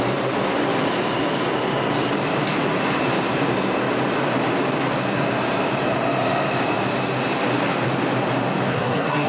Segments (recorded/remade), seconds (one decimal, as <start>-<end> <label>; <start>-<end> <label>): 0.0-8.7 recorded; 8.7-9.3 remade